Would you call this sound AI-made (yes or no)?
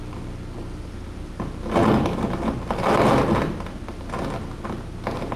no